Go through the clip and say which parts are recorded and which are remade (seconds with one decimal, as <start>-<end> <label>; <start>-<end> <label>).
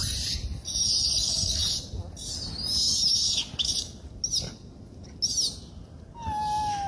0.0-6.9 recorded